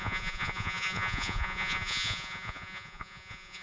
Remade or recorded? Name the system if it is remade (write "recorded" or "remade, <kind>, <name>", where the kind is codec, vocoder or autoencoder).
remade, vocoder, Vocos